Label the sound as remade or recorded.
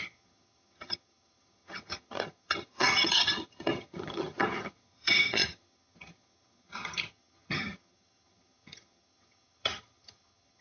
remade